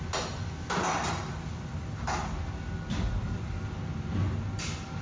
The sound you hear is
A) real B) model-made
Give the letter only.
A